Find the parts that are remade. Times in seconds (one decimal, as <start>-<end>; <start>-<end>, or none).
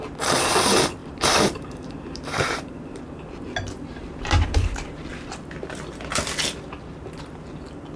1.0-3.0; 4.0-5.1